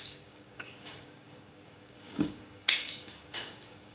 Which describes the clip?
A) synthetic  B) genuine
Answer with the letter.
A